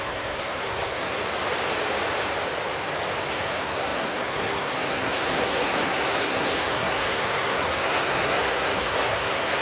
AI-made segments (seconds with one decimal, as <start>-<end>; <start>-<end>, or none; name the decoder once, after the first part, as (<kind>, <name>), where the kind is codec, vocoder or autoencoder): 0.0-1.2 (codec, SNAC); 3.3-9.6